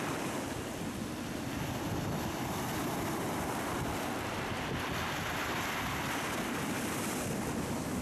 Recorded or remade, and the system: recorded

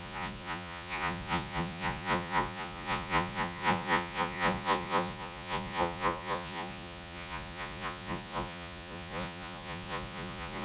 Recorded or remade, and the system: remade, vocoder, Vocos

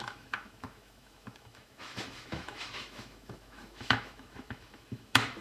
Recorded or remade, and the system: remade, autoencoder, DAC-VAE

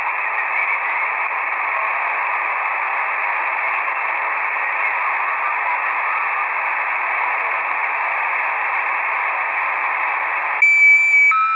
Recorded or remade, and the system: recorded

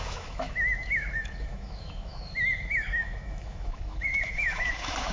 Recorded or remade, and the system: remade, autoencoder, DAC-VAE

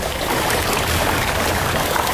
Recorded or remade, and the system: remade, codec, DAC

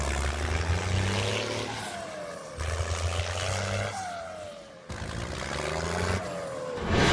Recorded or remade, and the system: recorded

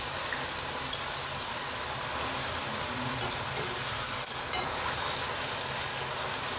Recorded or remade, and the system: recorded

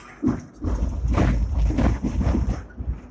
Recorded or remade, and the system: recorded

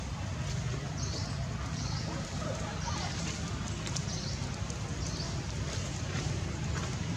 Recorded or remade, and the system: recorded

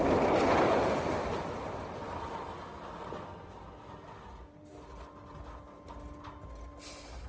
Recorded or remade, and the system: recorded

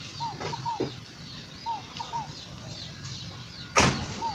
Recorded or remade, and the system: recorded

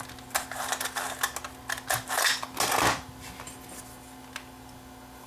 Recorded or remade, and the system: recorded